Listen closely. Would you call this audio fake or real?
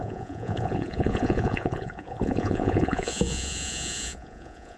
fake